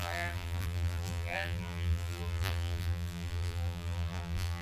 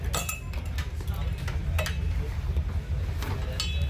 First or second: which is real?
second